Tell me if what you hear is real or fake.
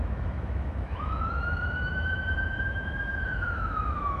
fake